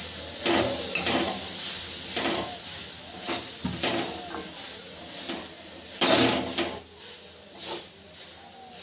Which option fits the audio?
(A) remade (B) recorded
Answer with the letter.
B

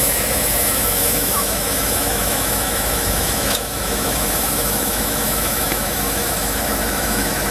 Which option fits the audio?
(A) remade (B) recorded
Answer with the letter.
A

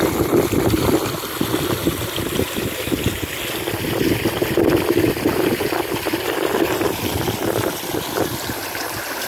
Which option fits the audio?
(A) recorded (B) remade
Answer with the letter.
A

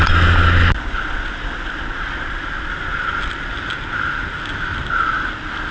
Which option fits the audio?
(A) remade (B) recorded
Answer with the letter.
B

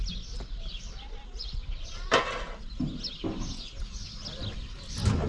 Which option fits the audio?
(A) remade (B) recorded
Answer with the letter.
B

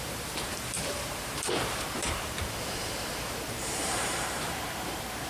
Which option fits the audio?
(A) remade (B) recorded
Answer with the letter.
A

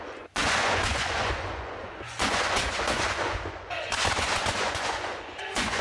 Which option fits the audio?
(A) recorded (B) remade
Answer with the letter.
B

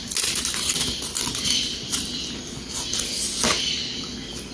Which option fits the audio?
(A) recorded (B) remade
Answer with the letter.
A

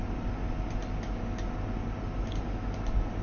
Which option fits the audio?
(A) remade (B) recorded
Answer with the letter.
B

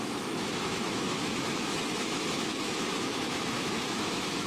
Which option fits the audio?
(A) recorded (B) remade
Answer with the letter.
B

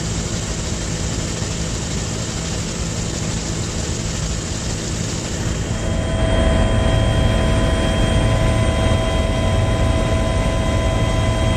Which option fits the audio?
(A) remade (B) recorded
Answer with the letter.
B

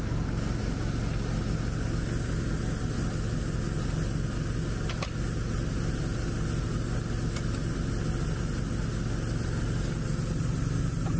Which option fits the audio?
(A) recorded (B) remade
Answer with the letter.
A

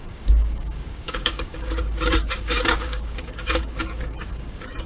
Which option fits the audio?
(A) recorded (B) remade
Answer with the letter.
B